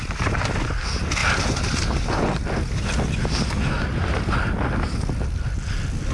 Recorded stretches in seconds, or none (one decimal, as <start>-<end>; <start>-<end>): 0.0-1.2; 2.2-6.1